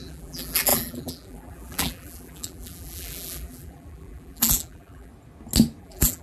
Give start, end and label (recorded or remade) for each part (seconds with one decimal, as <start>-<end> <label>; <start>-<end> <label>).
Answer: 0.0-5.1 remade; 5.1-5.8 recorded; 5.8-6.2 remade